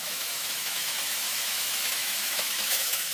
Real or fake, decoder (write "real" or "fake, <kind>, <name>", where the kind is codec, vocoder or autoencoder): fake, autoencoder, DAC-VAE